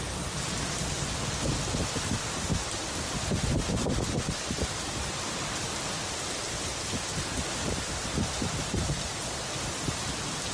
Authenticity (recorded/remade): recorded